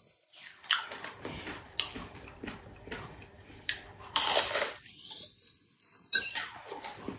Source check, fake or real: fake